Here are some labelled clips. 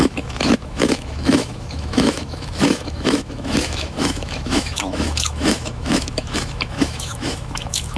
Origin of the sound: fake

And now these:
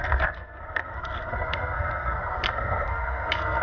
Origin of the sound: fake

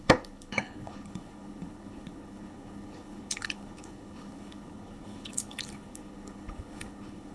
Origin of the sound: fake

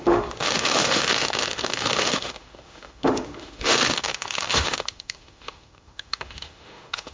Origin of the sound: fake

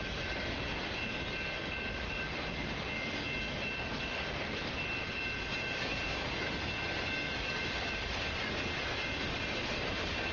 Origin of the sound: real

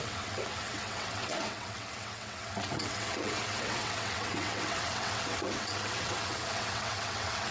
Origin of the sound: fake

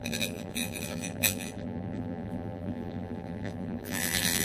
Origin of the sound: fake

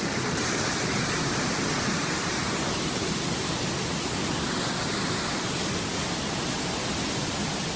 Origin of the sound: real